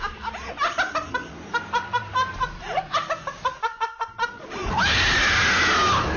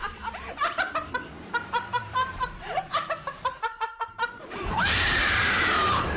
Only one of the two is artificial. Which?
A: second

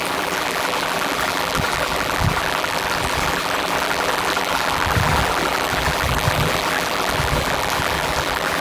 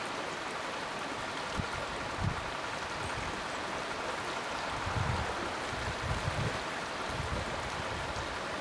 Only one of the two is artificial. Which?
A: first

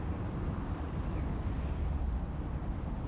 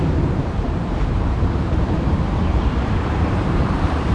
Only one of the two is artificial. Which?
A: second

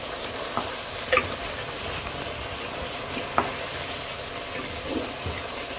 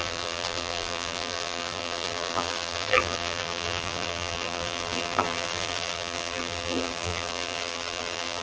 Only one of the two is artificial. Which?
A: second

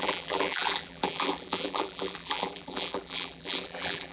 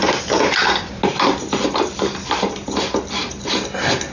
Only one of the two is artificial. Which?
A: first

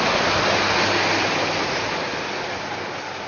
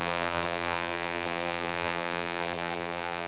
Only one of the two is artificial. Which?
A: second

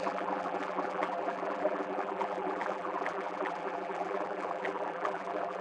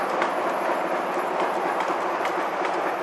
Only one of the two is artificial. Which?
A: first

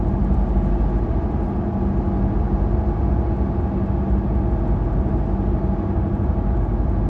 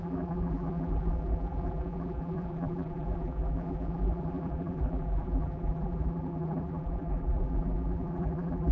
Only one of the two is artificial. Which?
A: second